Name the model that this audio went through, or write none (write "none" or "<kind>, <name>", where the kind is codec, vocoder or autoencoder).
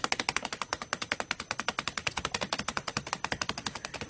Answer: none